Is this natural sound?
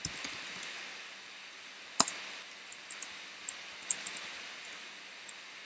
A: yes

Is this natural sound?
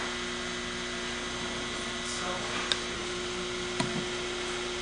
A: yes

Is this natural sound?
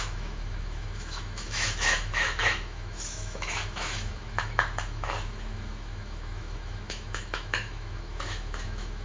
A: no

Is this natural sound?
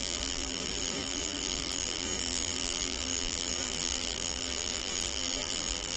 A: no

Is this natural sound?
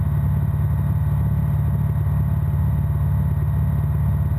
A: yes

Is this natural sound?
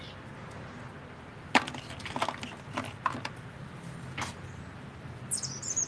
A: yes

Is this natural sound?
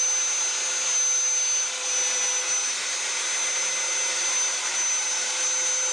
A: yes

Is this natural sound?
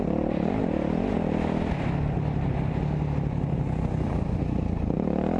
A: yes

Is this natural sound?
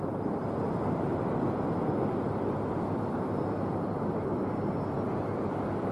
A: yes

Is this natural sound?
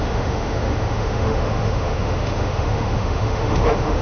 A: no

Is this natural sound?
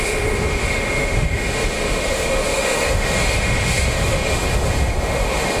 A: no